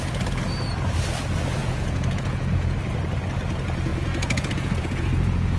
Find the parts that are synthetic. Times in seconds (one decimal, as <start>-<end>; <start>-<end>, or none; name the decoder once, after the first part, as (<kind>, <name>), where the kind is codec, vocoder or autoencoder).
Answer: 1.6-2.8 (vocoder, Vocos); 3.9-5.6